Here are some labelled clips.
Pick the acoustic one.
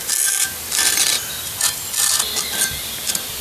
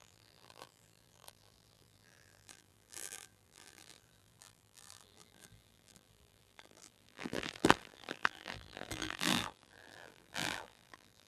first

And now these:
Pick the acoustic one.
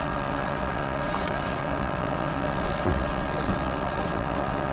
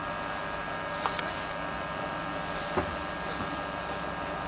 second